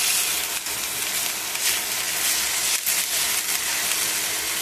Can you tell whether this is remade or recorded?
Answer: recorded